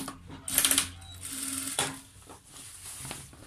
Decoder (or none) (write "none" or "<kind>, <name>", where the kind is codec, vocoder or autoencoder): none